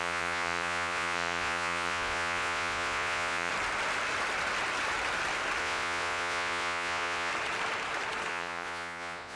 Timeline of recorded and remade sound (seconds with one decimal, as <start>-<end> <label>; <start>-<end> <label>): 0.0-3.5 remade; 3.5-5.6 recorded; 5.6-7.3 remade; 7.3-8.3 recorded; 8.3-9.4 remade